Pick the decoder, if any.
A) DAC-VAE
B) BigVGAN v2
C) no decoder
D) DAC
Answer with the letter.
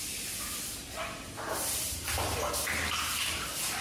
C